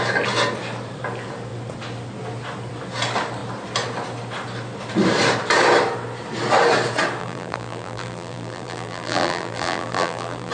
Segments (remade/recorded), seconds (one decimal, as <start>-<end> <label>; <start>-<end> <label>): 0.0-7.2 recorded; 7.2-10.5 remade